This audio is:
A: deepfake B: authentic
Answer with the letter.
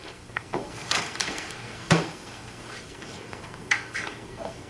A